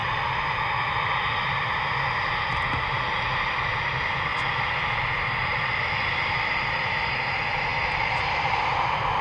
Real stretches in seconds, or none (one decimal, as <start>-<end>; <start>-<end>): 0.0-9.2